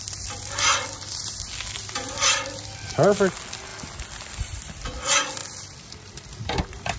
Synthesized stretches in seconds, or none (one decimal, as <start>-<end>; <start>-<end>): 0.0-3.7; 4.3-7.0